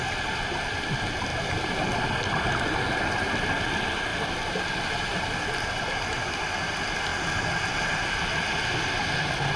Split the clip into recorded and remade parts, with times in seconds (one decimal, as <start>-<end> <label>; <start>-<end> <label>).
0.0-1.3 recorded; 1.3-2.5 remade; 2.5-4.1 recorded; 4.1-5.4 remade; 5.4-9.6 recorded